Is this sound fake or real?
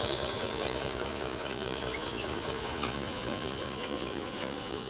fake